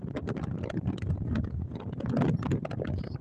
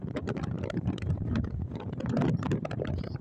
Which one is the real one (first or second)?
first